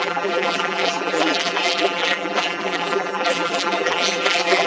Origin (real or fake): fake